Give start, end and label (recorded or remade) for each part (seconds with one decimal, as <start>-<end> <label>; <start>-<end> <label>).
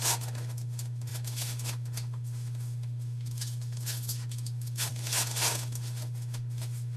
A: 0.0-7.0 remade